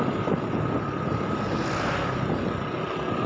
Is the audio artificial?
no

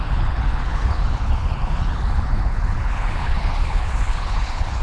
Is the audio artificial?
yes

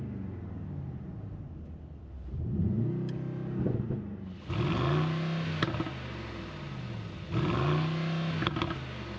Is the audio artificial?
no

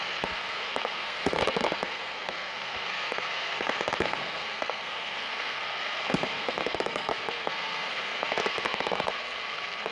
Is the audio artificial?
yes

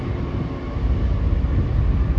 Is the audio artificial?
no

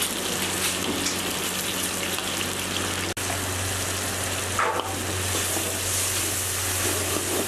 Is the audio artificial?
no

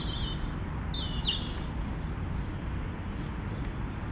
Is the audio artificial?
no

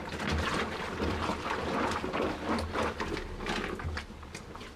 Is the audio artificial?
no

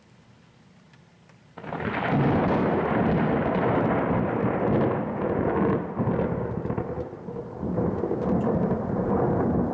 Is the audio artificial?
no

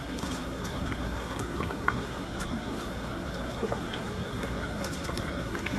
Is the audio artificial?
yes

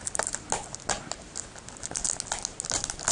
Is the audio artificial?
no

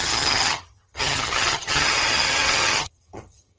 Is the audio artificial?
yes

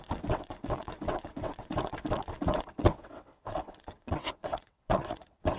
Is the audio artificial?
yes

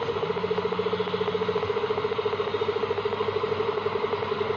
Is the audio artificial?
no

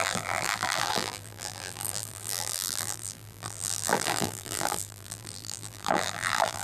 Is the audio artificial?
yes